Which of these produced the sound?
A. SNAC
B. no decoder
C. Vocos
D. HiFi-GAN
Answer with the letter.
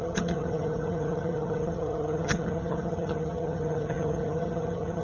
D